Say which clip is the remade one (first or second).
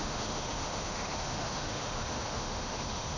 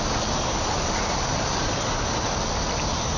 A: first